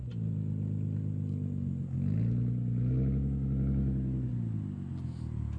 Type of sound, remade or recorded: recorded